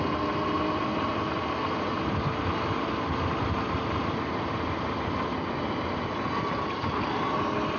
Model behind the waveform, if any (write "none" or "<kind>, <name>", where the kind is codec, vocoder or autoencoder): none